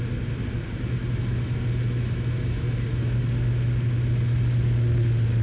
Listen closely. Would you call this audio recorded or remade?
recorded